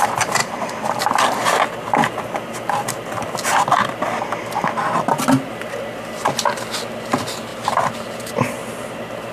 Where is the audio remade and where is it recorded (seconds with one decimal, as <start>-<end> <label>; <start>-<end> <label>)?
0.0-0.4 recorded; 0.4-1.0 remade; 1.0-7.5 recorded; 7.5-8.9 remade; 8.9-9.3 recorded